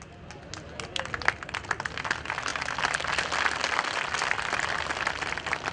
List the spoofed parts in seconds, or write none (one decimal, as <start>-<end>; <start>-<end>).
none

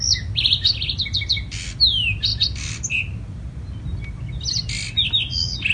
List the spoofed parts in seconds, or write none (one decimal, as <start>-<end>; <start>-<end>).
none

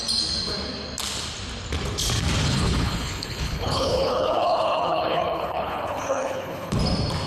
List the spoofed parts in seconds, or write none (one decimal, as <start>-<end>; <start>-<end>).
2.4-6.8

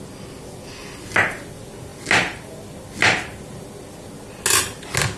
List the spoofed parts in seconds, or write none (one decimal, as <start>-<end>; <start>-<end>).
none

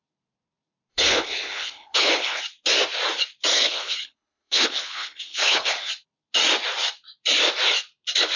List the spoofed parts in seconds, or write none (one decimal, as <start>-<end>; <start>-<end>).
0.9-2.4; 3.5-5.9

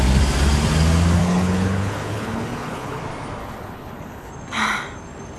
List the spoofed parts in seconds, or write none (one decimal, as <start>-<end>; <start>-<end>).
1.2-3.0; 3.4-4.3